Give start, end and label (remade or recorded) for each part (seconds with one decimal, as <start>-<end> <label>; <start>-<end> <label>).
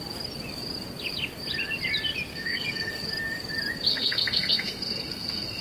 0.0-2.3 recorded; 2.3-2.9 remade; 2.9-3.9 recorded; 3.9-5.6 remade